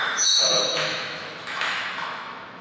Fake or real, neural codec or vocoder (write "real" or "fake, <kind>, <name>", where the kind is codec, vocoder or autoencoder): fake, autoencoder, DAC-VAE